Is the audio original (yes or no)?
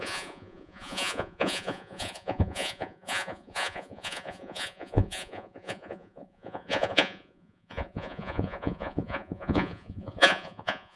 no